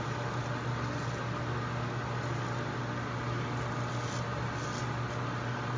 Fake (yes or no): no